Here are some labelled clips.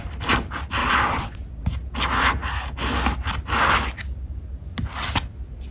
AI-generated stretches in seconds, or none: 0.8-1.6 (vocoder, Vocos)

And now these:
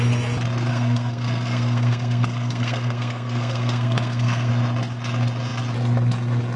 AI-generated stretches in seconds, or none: 0.7-4.5 (codec, SNAC)

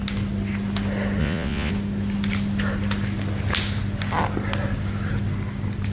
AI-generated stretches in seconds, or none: 1.2-1.7 (vocoder, Vocos)

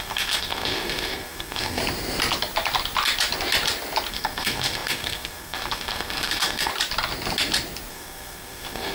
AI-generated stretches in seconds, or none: 0.0-1.8 (codec, SNAC); 4.1-6.7; 7.9-8.9

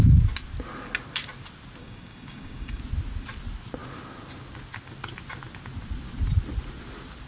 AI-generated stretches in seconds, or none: 1.8-2.8 (codec, DAC)

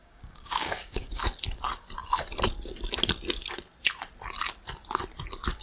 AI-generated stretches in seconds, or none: 0.0-1.2 (codec, DAC)

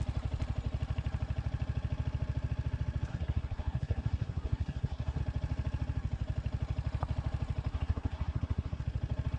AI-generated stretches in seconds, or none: 3.1-5.2 (codec, SNAC); 7.7-8.8